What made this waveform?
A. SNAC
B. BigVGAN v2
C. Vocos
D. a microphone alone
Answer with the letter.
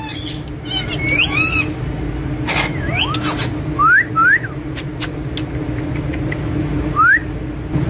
D